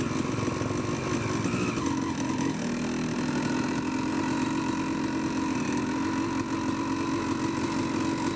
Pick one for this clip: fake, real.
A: real